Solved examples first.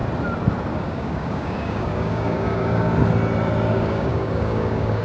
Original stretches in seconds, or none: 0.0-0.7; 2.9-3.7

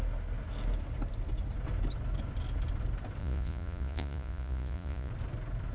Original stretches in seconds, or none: 0.0-3.2; 5.1-5.7

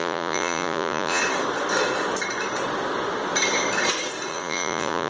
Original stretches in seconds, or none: 1.2-4.3

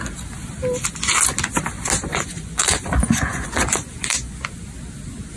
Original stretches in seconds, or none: 0.0-2.1; 4.4-5.4

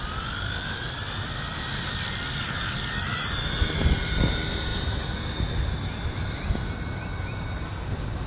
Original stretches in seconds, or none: 0.0-8.3

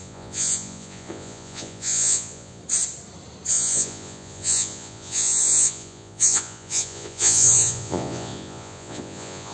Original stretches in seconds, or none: 2.6-3.5

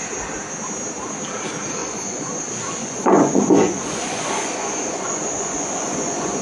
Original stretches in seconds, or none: 0.0-1.8; 2.4-2.8

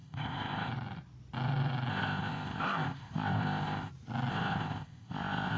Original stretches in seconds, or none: 0.7-1.9; 3.9-4.3